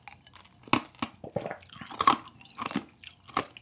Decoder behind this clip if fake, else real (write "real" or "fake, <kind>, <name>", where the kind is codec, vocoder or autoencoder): real